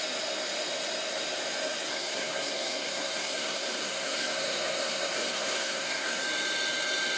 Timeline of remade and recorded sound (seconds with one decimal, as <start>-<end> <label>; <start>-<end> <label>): 0.0-1.9 recorded; 1.9-6.2 remade; 6.2-7.2 recorded